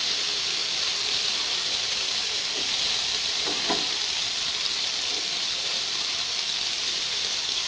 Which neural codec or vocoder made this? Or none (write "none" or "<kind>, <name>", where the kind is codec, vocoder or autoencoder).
vocoder, BigVGAN v2